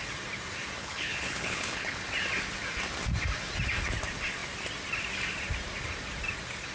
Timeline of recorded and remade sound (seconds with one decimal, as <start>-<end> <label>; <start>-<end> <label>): 0.0-0.8 recorded; 0.8-2.0 remade; 2.0-6.7 recorded